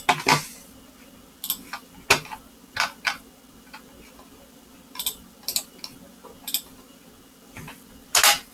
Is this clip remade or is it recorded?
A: recorded